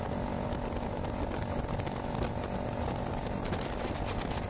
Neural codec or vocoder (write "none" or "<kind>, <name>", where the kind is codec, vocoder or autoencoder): none